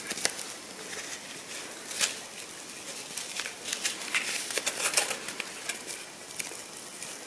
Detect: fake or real real